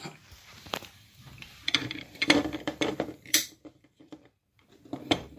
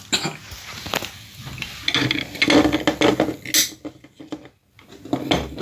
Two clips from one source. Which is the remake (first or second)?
first